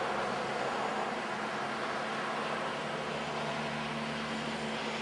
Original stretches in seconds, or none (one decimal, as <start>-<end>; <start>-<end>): 0.0-5.0